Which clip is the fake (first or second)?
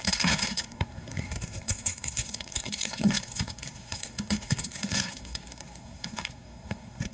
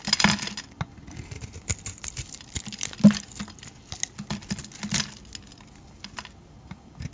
first